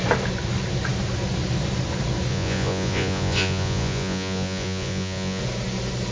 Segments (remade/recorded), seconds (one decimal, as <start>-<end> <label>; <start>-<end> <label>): 0.0-2.3 recorded; 2.3-5.4 remade; 5.4-6.1 recorded